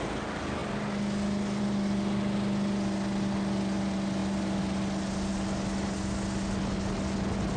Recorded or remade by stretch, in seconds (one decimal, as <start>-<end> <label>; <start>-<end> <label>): 0.0-7.6 recorded

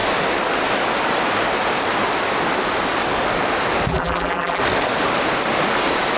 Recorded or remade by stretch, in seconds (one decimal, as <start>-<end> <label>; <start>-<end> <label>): 0.0-3.9 recorded; 3.9-4.6 remade; 4.6-6.2 recorded

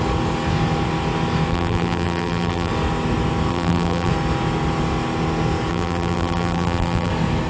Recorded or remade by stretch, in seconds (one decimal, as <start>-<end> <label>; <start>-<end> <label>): 0.0-1.5 recorded; 1.5-2.7 remade; 2.7-3.5 recorded; 3.5-4.1 remade; 4.1-5.7 recorded; 5.7-7.1 remade; 7.1-7.5 recorded

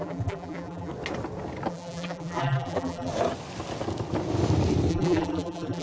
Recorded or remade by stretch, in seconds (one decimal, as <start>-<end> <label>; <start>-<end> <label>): 0.0-0.9 remade; 0.9-1.7 recorded; 1.7-3.1 remade; 3.1-4.9 recorded; 4.9-5.8 remade

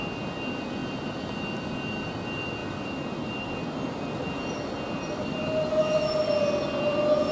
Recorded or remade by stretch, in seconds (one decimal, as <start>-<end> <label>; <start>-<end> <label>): 0.0-2.6 recorded; 2.6-5.7 remade; 5.7-7.3 recorded